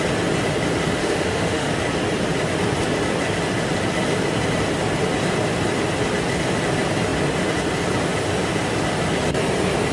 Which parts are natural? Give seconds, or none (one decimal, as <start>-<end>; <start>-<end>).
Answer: 0.0-1.0; 1.7-9.9